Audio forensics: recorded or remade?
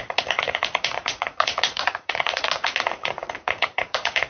remade